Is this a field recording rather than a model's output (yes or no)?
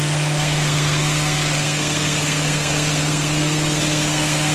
no